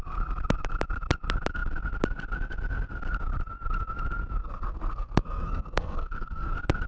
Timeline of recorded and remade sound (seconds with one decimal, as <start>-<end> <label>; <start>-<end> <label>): 0.0-4.4 recorded; 4.4-6.5 remade; 6.5-6.9 recorded